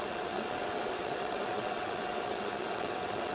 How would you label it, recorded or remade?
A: remade